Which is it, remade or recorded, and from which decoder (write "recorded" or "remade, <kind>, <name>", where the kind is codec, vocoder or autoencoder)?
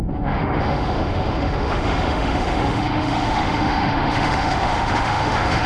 remade, autoencoder, DAC-VAE